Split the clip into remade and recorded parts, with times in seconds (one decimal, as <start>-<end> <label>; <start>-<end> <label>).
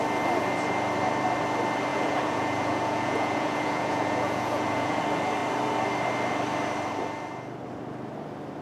0.0-1.9 recorded; 1.9-5.0 remade; 5.0-8.6 recorded